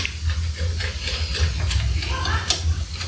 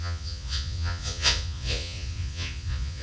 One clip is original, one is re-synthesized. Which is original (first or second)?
first